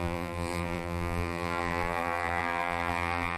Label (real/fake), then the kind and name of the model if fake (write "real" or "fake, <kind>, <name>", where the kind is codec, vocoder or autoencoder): fake, vocoder, BigVGAN v2